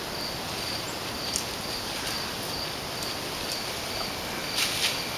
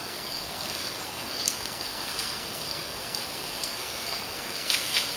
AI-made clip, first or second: second